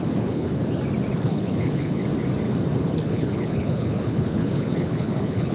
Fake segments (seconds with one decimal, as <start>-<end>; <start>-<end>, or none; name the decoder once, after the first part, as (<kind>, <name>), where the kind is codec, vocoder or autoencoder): 0.0-0.6 (codec, HILCodec); 1.1-2.0; 2.8-5.5